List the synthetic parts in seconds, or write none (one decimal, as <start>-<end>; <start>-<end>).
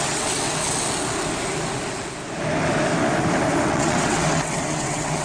0.0-0.6; 3.7-5.2